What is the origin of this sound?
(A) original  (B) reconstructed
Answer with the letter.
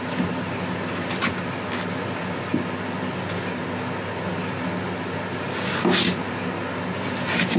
A